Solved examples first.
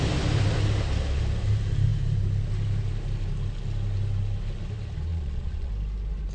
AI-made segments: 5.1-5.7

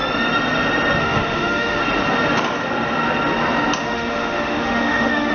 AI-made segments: 1.0-1.8; 3.8-5.3

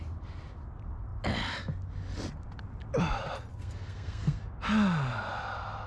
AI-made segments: 3.5-4.4

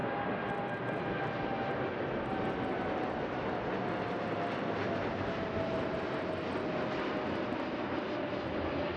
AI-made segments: none

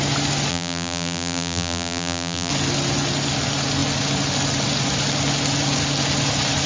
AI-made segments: 0.5-2.5

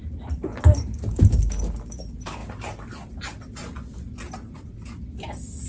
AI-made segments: none

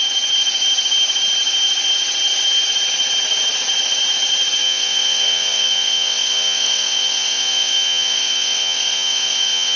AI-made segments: 4.6-9.8